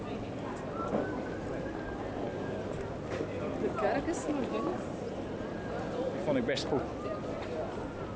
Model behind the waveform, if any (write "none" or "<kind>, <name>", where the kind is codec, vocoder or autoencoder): none